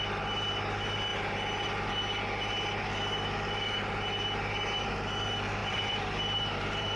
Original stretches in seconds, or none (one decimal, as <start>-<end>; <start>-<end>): 0.0-5.6